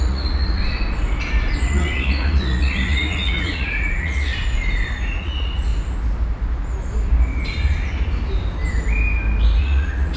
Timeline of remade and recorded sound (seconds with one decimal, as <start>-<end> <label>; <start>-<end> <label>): 0.0-0.6 remade; 0.6-1.6 recorded; 1.6-4.3 remade; 4.3-5.0 recorded; 5.0-5.7 remade; 5.7-9.6 recorded; 9.6-10.2 remade